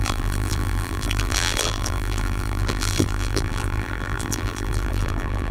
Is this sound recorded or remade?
remade